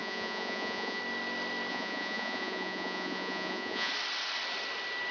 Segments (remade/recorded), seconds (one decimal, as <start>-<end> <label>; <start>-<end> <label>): 0.0-1.0 remade; 1.0-1.7 recorded; 1.7-3.9 remade; 3.9-5.1 recorded